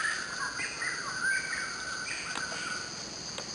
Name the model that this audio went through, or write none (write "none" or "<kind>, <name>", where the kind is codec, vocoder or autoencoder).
none